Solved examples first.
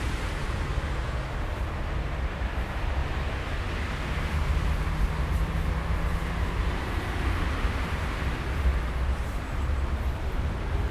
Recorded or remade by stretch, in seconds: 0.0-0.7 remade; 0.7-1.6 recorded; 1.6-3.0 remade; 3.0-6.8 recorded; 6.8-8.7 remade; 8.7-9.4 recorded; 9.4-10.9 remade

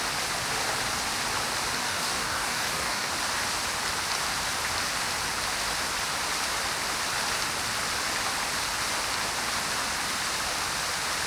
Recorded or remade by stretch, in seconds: 0.0-1.8 recorded; 1.8-3.1 remade; 3.1-11.3 recorded

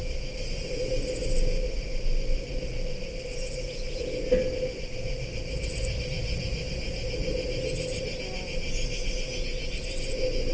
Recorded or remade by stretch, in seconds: 0.0-10.5 recorded

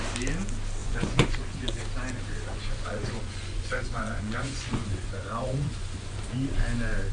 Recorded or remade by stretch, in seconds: 0.0-0.8 recorded; 0.8-1.8 remade; 1.8-2.5 recorded; 2.5-6.2 remade; 6.2-7.1 recorded